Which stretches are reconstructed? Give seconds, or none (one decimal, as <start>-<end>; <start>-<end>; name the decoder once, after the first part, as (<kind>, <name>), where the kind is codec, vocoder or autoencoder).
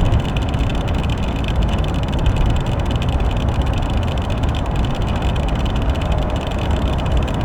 none